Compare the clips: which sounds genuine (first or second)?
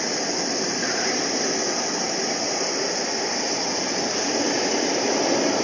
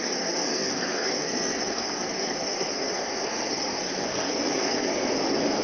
first